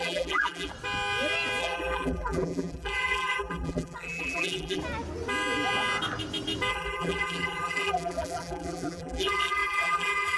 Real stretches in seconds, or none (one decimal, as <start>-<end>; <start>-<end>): 0.7-1.6; 4.8-6.7